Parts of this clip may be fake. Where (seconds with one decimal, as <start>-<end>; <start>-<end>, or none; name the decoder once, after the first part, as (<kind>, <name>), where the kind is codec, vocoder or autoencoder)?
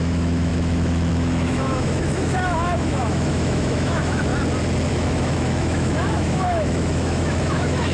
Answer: 0.0-4.3 (autoencoder, DAC-VAE); 4.9-7.9